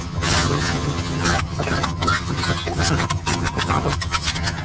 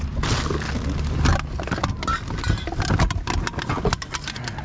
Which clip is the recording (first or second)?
second